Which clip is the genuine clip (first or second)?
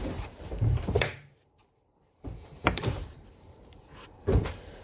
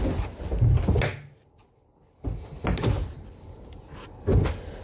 second